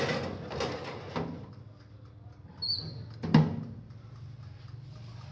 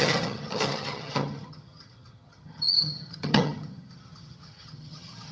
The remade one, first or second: second